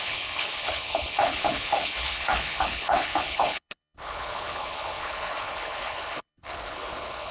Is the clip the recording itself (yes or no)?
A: no